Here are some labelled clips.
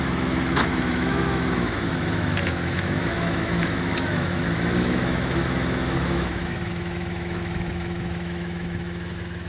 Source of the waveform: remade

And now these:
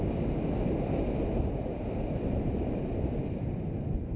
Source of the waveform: recorded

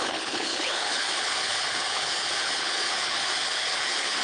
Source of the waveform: remade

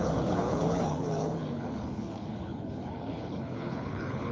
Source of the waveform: remade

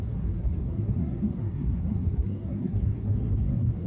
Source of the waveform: remade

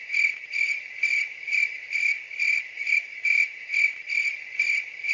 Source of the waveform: remade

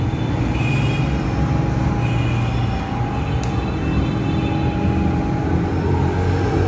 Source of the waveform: recorded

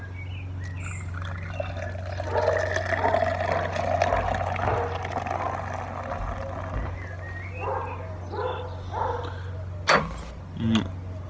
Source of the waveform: recorded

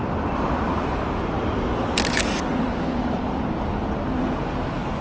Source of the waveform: recorded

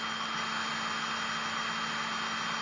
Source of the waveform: recorded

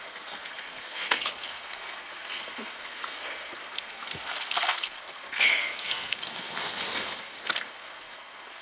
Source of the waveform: remade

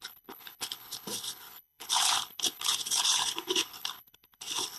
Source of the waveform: remade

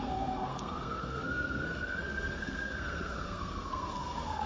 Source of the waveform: remade